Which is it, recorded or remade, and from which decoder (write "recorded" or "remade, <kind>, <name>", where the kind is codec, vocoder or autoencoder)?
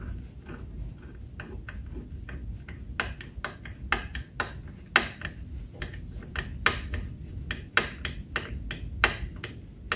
recorded